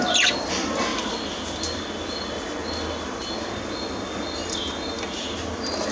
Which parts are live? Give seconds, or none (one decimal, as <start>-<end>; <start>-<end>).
0.0-0.9; 1.8-4.6; 5.3-5.9